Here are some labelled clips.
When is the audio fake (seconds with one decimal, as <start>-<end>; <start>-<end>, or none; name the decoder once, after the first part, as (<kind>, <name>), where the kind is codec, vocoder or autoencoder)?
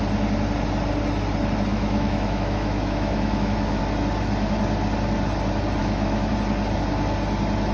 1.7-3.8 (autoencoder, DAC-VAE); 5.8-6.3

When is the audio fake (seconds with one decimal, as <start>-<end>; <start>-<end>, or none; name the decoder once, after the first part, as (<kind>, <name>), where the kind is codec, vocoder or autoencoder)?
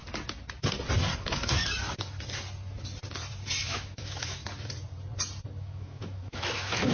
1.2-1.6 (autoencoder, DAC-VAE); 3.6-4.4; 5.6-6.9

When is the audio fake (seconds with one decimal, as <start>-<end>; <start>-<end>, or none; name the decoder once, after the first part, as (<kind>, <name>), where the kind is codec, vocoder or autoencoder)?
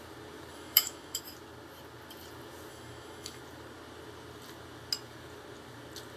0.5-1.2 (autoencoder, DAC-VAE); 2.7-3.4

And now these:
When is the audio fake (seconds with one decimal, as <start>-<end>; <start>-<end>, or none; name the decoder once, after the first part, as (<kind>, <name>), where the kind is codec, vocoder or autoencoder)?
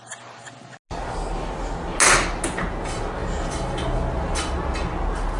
none